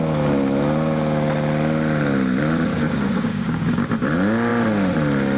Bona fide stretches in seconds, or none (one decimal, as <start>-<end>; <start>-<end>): 0.0-2.7; 3.9-5.4

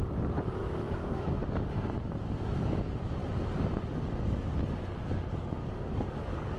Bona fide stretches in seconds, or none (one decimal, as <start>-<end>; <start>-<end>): 0.0-0.6; 1.7-5.6

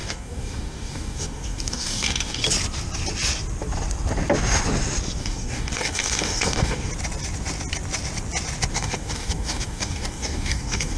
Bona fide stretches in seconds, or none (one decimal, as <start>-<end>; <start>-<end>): 2.4-5.2; 6.9-8.7

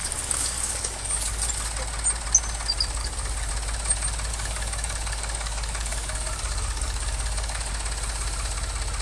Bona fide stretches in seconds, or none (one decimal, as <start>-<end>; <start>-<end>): 1.4-3.0; 3.5-4.3; 7.7-9.0

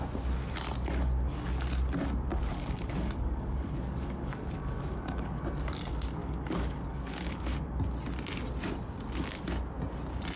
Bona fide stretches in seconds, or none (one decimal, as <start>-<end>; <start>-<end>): 0.0-2.3; 5.4-6.2; 7.5-10.4

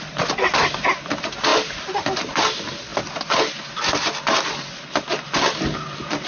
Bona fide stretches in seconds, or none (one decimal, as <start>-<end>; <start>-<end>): 0.0-6.3

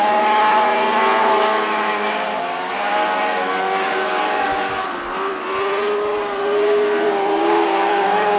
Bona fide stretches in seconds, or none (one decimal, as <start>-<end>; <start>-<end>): 0.4-1.2; 4.5-7.4